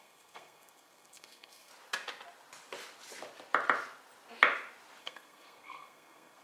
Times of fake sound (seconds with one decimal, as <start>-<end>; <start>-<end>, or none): 0.0-1.7; 5.0-6.4